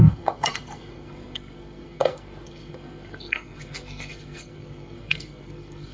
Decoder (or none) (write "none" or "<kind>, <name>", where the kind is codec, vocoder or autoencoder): codec, SNAC